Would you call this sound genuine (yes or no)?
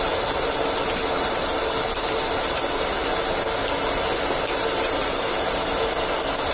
yes